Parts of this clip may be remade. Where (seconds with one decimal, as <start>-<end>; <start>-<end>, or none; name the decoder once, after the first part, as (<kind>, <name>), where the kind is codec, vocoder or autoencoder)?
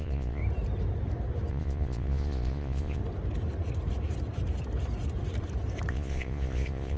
0.0-0.4 (vocoder, Vocos); 1.5-3.0; 5.9-7.0